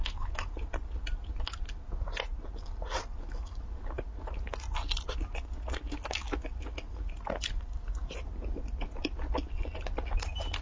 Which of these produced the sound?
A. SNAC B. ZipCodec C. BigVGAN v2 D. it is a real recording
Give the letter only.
D